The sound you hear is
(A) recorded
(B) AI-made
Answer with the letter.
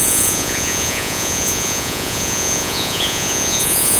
B